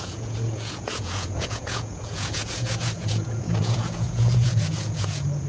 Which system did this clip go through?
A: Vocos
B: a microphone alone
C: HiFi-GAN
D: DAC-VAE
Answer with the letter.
A